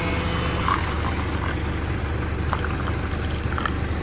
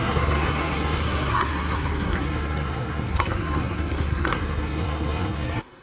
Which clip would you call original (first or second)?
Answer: first